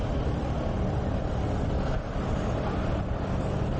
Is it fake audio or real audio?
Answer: real